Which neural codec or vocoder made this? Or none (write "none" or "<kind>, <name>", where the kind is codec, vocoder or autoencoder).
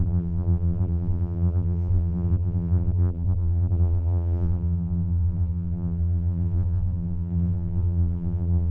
vocoder, BigVGAN v2